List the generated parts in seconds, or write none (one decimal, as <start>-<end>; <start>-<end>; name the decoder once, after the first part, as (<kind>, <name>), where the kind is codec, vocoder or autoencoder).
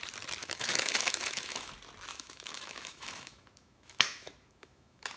0.4-1.7 (autoencoder, DAC-VAE); 2.1-5.2